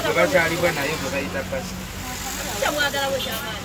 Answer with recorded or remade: recorded